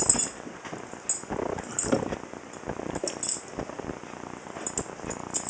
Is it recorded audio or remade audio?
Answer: recorded